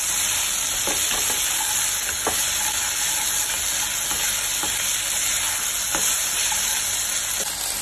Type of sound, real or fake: real